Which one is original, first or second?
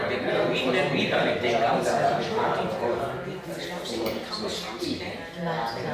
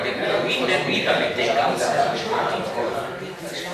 first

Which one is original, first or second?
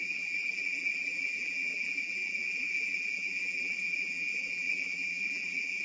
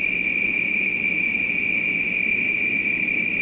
second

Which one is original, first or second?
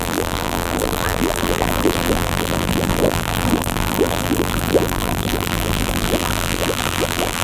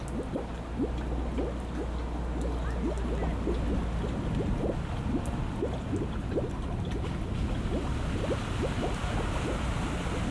second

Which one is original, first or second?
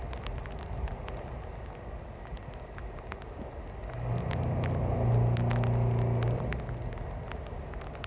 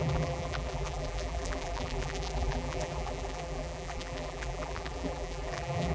first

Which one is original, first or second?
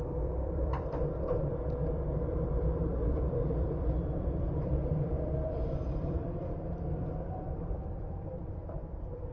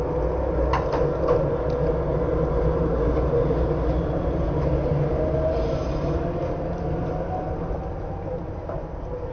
second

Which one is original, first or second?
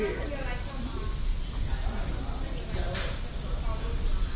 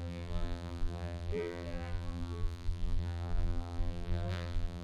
first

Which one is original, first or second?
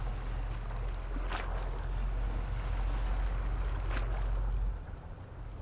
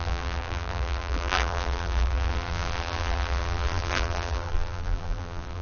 first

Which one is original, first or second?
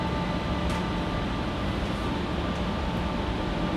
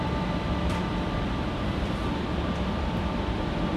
first